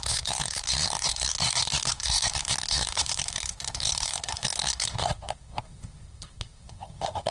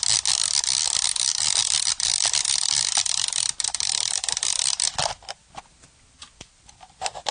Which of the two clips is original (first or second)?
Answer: second